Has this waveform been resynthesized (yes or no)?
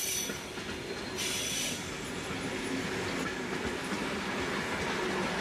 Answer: no